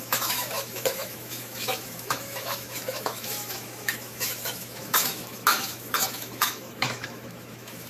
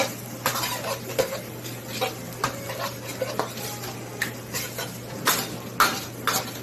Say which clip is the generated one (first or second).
first